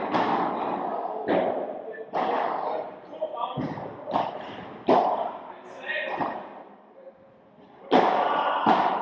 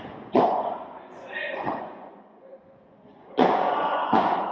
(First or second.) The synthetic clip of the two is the second